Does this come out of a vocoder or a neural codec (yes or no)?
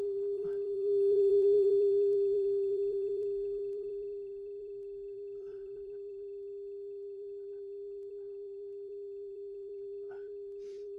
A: yes